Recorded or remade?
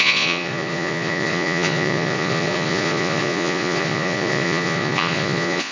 remade